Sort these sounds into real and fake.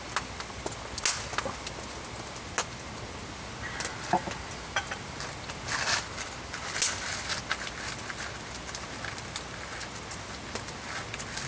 real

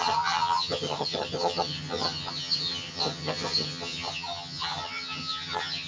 fake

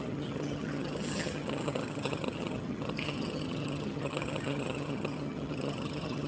fake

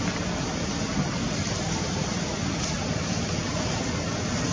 real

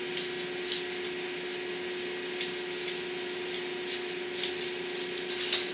real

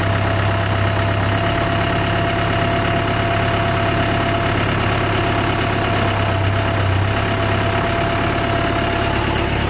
real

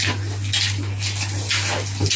real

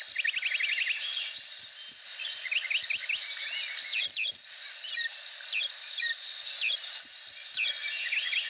real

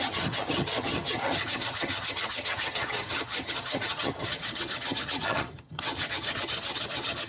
fake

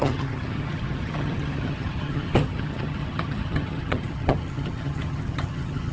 fake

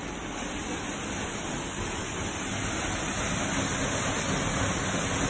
real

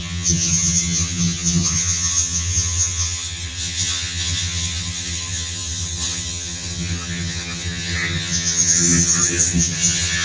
fake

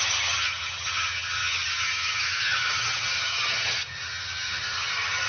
fake